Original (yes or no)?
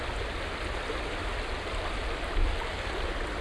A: yes